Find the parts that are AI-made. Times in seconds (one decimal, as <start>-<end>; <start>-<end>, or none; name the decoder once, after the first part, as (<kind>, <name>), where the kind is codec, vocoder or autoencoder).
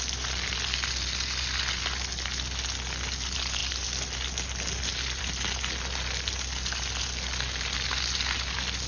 none